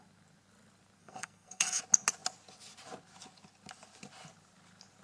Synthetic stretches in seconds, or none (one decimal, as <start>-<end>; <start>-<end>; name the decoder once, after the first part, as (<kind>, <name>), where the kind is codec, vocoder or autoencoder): 1.0-1.8 (codec, SNAC)